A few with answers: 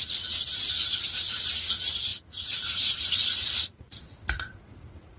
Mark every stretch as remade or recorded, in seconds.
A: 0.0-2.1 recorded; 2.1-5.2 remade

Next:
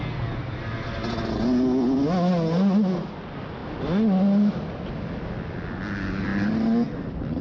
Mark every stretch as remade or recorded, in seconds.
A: 0.0-7.4 recorded

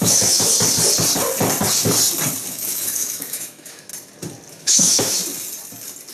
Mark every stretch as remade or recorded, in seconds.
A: 0.0-0.5 remade; 0.5-2.5 recorded; 2.5-3.9 remade; 3.9-4.5 recorded; 4.5-5.2 remade; 5.2-6.1 recorded

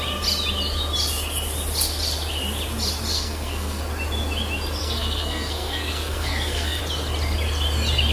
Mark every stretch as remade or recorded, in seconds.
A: 0.0-3.1 recorded; 3.1-3.8 remade; 3.8-4.8 recorded; 4.8-6.8 remade; 6.8-8.1 recorded